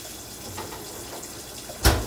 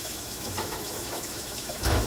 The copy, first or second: second